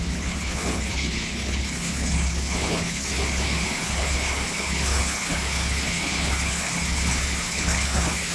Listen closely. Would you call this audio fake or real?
fake